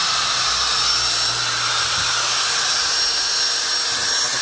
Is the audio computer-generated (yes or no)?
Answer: no